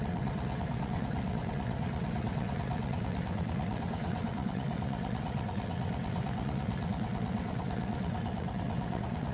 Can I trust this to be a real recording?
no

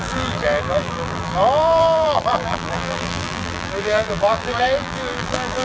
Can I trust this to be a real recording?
no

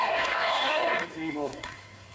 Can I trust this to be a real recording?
no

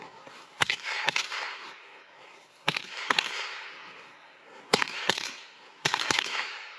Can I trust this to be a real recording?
no